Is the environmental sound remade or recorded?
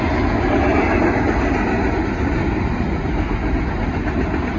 recorded